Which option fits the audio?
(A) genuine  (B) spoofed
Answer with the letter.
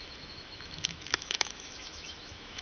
B